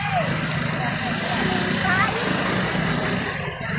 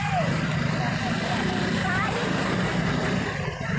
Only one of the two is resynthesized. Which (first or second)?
second